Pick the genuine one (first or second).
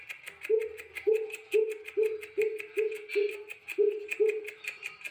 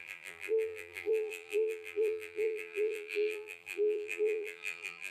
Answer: first